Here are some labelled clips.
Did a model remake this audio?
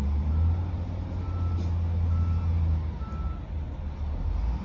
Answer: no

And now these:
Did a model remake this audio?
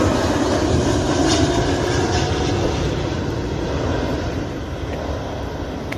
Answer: no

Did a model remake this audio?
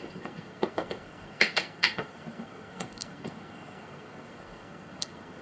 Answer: yes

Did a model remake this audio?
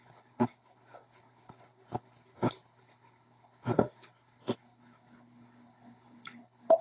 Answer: yes